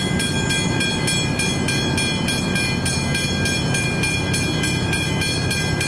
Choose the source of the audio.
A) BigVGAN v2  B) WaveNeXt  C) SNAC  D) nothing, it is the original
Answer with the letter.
D